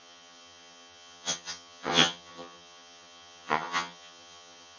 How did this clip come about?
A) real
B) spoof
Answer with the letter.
B